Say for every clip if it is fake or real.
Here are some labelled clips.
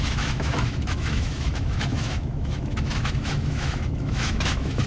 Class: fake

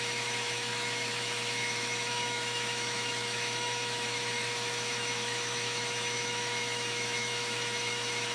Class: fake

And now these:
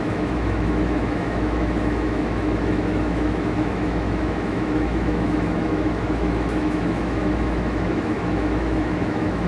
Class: fake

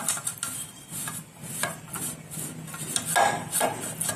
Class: real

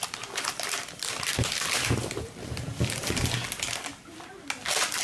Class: real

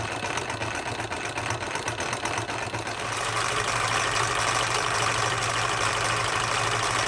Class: real